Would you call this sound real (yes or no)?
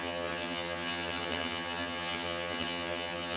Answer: no